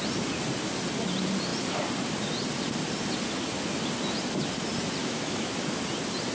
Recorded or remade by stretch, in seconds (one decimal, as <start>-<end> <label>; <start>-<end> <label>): 0.0-5.0 recorded; 5.0-5.5 remade; 5.5-6.3 recorded